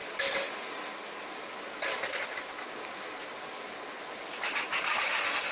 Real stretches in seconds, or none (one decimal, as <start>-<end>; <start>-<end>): 0.0-5.5